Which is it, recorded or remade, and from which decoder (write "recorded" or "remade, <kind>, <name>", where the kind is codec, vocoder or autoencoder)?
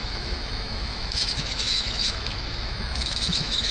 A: remade, autoencoder, DAC-VAE